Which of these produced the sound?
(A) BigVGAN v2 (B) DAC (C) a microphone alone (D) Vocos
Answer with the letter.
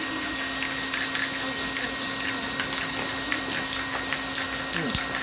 C